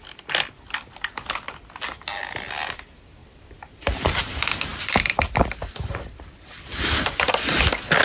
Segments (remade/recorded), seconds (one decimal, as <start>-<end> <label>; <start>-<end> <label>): 0.0-3.2 recorded; 3.2-4.2 remade; 4.2-4.7 recorded; 4.7-7.3 remade; 7.3-8.0 recorded